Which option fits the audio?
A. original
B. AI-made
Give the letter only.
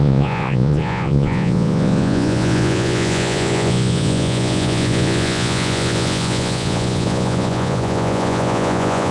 B